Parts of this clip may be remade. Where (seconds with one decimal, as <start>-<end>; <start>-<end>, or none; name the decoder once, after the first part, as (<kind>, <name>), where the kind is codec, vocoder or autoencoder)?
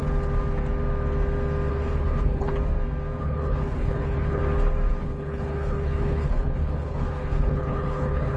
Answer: 1.7-2.5 (codec, HILCodec); 3.2-4.4; 5.0-8.4